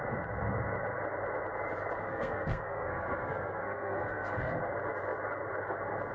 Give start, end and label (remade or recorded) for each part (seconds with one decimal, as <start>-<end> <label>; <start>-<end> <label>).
0.0-2.0 recorded; 2.0-4.6 remade; 4.6-6.1 recorded